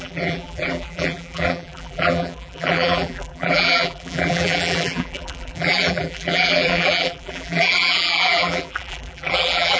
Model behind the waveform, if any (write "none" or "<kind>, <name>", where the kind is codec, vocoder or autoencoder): vocoder, BigVGAN v2